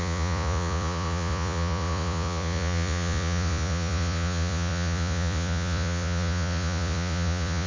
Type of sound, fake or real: fake